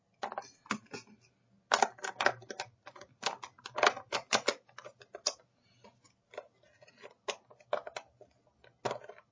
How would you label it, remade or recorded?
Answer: recorded